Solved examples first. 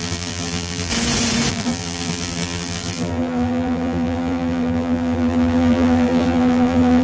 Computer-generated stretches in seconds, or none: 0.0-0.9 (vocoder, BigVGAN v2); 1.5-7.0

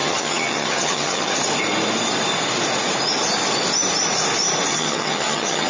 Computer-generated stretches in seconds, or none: 0.0-1.3 (vocoder, HiFi-GAN); 4.7-5.7

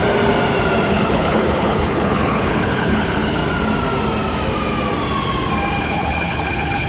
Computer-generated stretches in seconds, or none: 0.9-3.4 (codec, HILCodec); 5.8-6.9

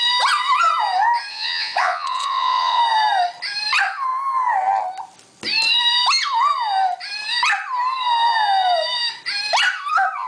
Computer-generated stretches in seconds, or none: 1.3-2.8 (vocoder, Vocos)